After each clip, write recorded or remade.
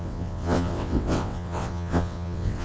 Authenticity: remade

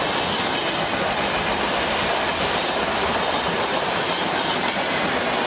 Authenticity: recorded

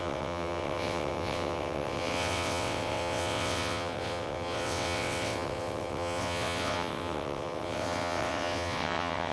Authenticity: remade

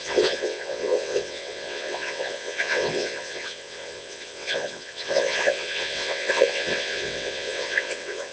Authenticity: remade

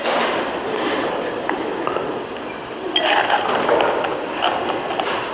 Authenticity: recorded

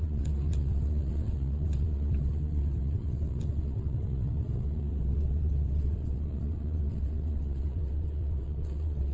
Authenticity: remade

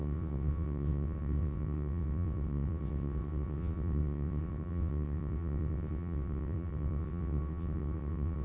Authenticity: remade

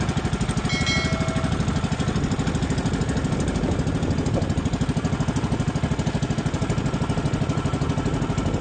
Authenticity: recorded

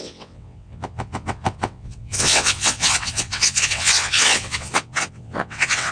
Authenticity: remade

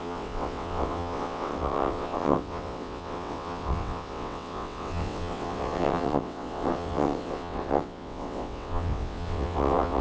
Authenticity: remade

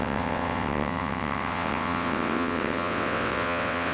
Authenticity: remade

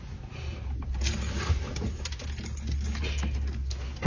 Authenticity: recorded